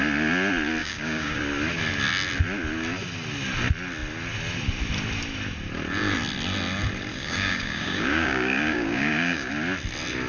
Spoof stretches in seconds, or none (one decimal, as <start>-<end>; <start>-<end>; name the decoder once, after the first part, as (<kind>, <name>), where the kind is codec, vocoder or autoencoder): 0.8-1.4 (codec, DAC); 7.1-9.5